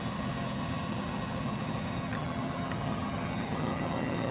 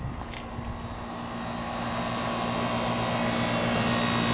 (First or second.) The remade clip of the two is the first